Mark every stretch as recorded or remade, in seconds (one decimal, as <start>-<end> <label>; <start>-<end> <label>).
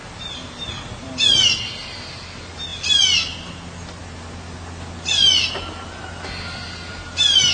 0.0-7.5 recorded